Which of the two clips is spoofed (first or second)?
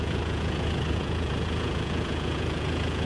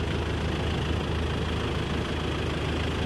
first